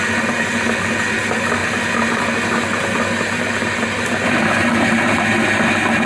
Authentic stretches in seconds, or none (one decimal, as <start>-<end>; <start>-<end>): 0.0-6.1